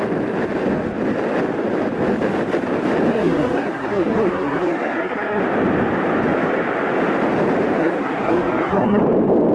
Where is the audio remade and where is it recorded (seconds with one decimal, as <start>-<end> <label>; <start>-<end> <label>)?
0.0-3.1 recorded; 3.1-5.4 remade; 5.4-7.8 recorded; 7.8-9.0 remade; 9.0-9.5 recorded